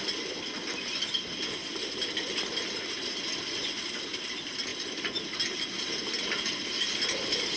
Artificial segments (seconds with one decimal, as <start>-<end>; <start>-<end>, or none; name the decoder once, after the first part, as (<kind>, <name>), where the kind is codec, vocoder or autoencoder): none